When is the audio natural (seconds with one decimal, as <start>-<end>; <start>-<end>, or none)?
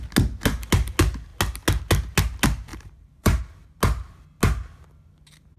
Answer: 0.0-2.7; 3.4-5.6